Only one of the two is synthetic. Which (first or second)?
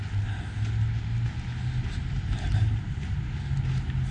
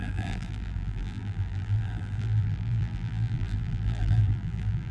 second